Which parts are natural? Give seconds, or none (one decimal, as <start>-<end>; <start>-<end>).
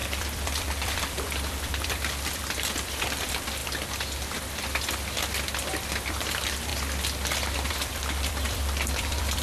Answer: 3.6-5.7; 6.7-7.7